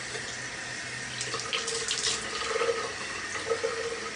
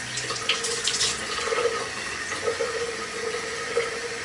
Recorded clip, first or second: first